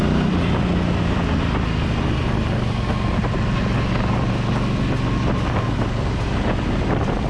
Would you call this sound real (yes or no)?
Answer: yes